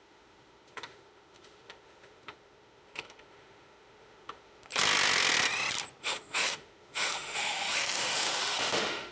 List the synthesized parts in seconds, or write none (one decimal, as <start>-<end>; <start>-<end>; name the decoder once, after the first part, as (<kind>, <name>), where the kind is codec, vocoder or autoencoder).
0.0-4.7 (autoencoder, DAC-VAE); 6.0-9.1